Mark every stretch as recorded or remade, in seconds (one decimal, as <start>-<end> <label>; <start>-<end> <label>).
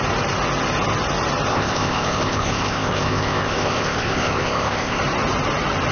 0.0-1.5 recorded; 1.5-5.0 remade; 5.0-5.9 recorded